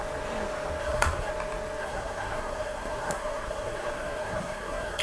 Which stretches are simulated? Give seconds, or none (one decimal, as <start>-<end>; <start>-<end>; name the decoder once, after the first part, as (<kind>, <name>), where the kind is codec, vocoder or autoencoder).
0.8-1.3 (codec, SNAC); 1.8-5.0